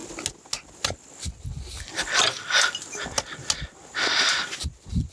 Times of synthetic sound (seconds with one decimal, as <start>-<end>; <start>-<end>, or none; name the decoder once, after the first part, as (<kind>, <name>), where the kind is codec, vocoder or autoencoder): none